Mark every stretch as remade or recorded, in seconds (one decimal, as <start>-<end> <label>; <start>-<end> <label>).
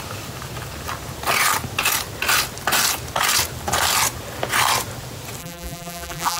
0.0-5.4 recorded; 5.4-6.4 remade